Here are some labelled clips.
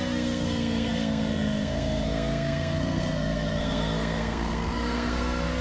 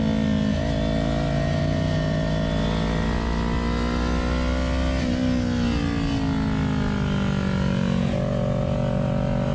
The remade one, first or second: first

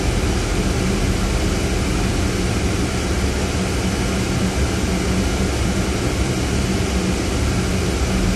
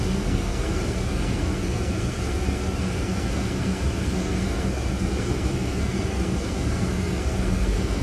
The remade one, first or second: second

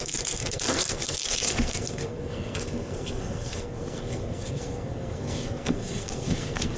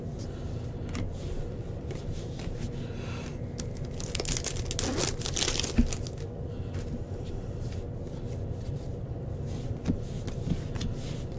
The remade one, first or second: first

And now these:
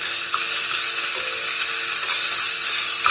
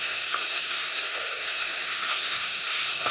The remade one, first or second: second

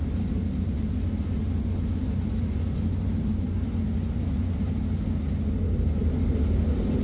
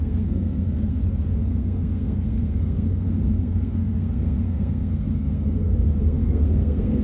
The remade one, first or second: second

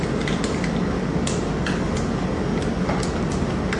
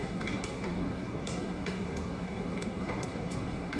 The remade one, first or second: second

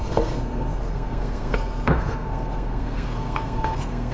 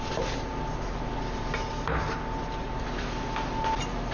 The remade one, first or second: first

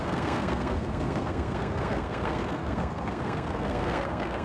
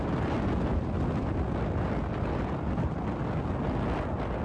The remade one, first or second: first